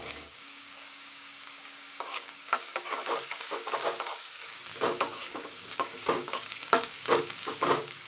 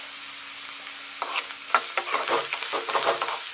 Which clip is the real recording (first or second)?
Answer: second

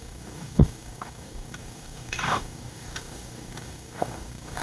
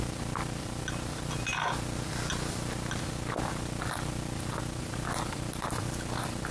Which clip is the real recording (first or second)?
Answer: second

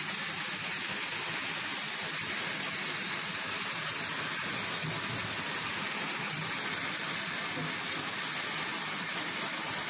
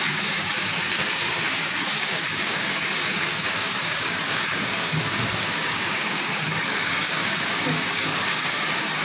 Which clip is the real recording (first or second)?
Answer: first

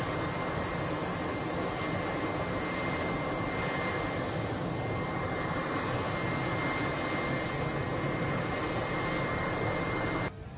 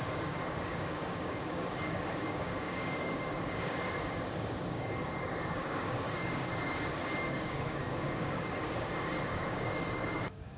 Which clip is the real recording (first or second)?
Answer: first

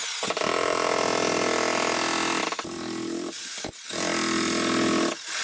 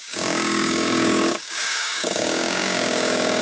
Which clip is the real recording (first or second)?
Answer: first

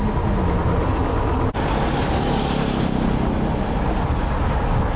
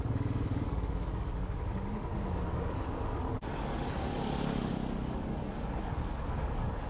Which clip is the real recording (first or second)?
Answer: first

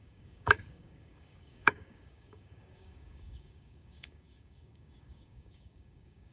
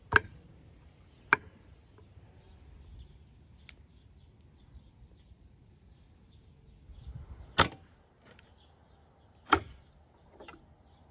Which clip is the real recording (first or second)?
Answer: second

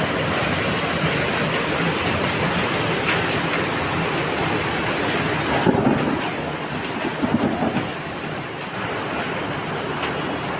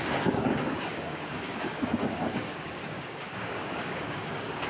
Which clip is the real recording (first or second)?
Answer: first